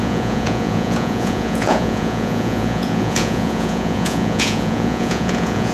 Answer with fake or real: fake